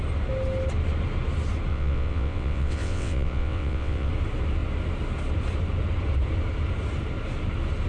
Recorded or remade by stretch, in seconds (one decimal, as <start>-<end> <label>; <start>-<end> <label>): 0.0-1.7 recorded; 1.7-4.1 remade; 4.1-7.9 recorded

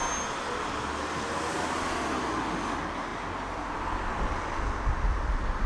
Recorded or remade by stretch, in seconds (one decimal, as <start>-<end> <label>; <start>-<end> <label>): 0.0-5.7 recorded

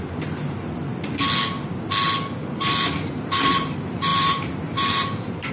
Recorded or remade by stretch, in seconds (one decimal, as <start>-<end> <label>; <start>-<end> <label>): 0.0-0.9 remade; 0.9-2.5 recorded; 2.5-5.5 remade

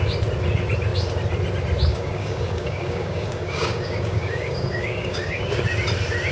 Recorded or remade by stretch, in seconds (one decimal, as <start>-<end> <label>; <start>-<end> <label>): 0.0-1.9 recorded; 1.9-5.6 remade; 5.6-6.3 recorded

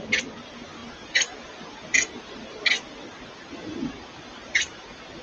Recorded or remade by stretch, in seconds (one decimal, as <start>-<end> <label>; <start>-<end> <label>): 0.0-5.2 recorded